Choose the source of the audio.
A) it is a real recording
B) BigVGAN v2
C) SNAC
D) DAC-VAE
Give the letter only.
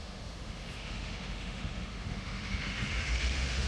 D